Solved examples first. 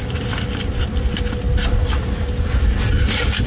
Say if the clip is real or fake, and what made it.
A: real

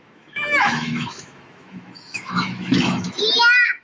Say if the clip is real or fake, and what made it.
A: fake, autoencoder, DAC-VAE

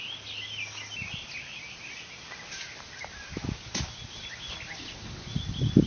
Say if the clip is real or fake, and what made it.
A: real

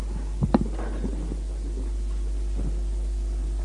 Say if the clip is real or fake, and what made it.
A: real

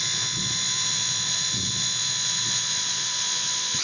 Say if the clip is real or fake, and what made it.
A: fake, vocoder, Vocos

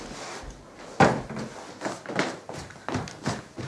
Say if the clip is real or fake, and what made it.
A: real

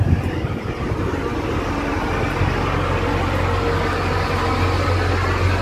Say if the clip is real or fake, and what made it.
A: real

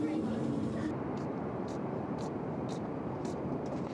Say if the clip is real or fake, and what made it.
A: fake, vocoder, BigVGAN v2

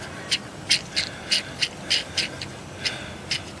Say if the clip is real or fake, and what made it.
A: real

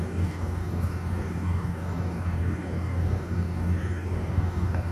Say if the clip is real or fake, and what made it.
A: fake, codec, DAC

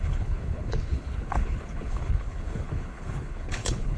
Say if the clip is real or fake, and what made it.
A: fake, codec, HILCodec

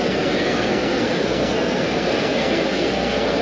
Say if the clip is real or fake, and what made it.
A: fake, codec, SNAC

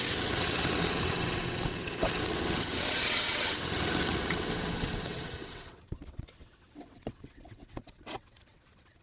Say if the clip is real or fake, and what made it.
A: fake, vocoder, WaveNeXt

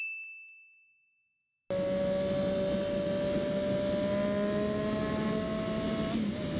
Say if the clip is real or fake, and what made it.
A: real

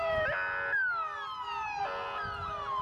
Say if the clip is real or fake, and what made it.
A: real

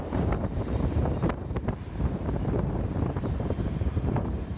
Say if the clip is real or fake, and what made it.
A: fake, vocoder, BigVGAN v2